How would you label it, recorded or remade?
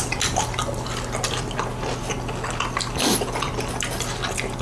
recorded